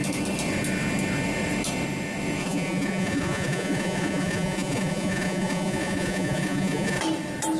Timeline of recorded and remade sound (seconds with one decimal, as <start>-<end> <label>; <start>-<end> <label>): 0.0-2.4 recorded; 2.4-7.0 remade; 7.0-7.6 recorded